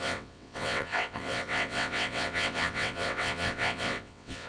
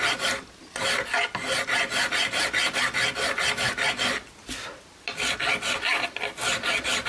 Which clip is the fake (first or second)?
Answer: first